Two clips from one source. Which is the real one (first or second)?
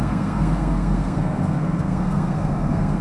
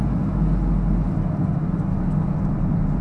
second